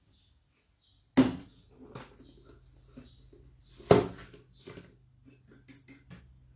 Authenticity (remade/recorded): recorded